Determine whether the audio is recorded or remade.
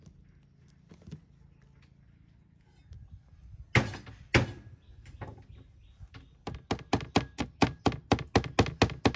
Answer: recorded